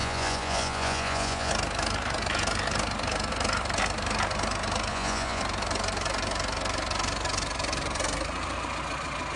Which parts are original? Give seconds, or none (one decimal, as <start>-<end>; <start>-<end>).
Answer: 1.5-4.9; 5.4-9.4